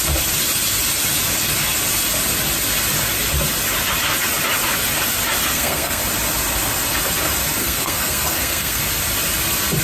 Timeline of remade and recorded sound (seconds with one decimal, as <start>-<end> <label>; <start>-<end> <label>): 0.0-5.5 recorded; 5.5-6.0 remade; 6.0-7.6 recorded; 7.6-8.8 remade; 8.8-9.8 recorded